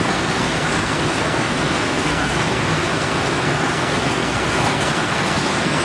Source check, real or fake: fake